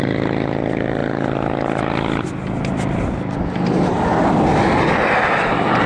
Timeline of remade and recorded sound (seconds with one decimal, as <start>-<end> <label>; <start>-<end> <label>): 0.0-5.9 recorded